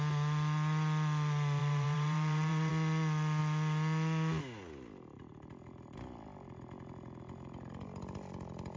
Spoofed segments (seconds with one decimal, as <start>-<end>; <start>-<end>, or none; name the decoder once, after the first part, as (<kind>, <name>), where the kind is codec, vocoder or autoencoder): 1.6-2.7 (vocoder, BigVGAN v2)

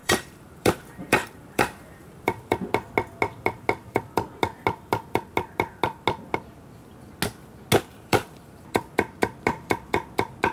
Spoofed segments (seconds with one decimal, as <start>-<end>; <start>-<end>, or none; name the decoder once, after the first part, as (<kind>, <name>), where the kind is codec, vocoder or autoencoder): 0.0-2.7 (vocoder, BigVGAN v2); 7.9-8.8

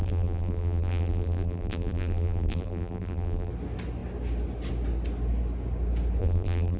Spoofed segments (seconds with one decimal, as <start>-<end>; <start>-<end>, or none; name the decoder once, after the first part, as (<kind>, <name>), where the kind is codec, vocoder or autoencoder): 0.0-3.5 (vocoder, BigVGAN v2); 6.2-6.8